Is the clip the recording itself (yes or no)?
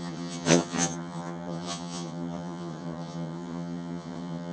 no